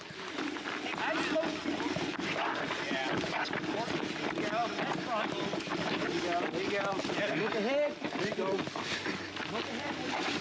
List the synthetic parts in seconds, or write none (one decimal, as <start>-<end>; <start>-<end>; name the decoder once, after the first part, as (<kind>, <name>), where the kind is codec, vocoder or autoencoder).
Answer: none